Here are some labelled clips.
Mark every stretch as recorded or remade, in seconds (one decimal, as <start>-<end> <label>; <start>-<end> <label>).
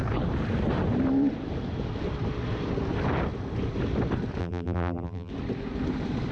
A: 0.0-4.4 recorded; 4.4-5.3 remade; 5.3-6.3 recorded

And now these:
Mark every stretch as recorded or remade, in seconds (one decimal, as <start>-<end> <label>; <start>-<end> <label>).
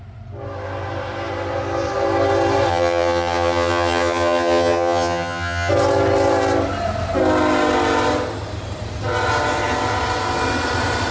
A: 0.0-2.7 recorded; 2.7-5.7 remade; 5.7-11.1 recorded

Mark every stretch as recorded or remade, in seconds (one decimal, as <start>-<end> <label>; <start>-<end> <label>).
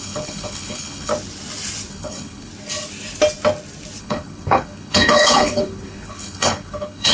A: 0.0-1.1 remade; 1.1-1.9 recorded; 1.9-2.5 remade; 2.5-4.0 recorded; 4.0-7.1 remade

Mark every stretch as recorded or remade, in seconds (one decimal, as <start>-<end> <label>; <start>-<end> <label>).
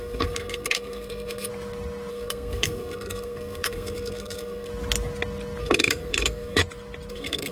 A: 0.0-1.5 remade; 1.5-2.1 recorded; 2.1-4.7 remade; 4.7-5.6 recorded; 5.6-6.6 remade; 6.6-7.1 recorded; 7.1-7.5 remade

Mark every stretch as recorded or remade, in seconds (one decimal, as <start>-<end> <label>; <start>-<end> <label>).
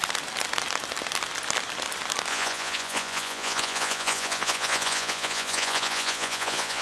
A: 0.0-2.3 recorded; 2.3-6.8 remade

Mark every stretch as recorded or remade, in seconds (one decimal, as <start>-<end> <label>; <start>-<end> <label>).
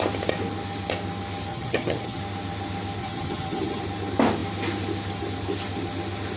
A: 0.0-1.5 recorded; 1.5-2.2 remade; 2.2-3.0 recorded; 3.0-3.8 remade; 3.8-6.4 recorded